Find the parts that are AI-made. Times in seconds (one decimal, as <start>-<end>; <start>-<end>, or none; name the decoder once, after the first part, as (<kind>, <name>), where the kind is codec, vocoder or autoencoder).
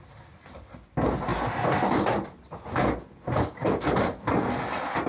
none